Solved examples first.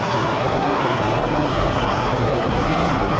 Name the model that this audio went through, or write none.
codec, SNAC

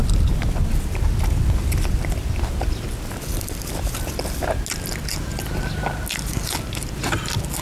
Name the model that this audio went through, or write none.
none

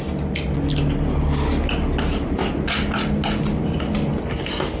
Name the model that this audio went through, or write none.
none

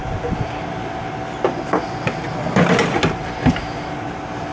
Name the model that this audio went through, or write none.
none